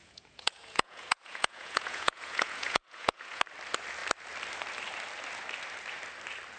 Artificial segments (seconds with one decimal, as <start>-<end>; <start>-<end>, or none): 0.0-3.4